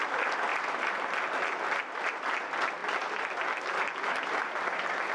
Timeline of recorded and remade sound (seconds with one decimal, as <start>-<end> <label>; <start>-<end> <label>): 0.0-0.5 recorded; 0.5-2.1 remade; 2.1-5.1 recorded